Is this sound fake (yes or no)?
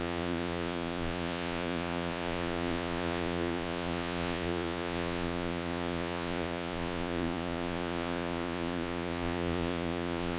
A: yes